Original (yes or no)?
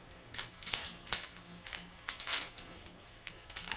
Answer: no